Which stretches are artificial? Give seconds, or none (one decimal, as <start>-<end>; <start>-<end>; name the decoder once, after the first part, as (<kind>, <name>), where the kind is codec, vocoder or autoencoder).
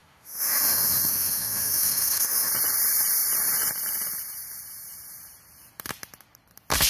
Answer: 0.0-2.5 (autoencoder, DAC-VAE)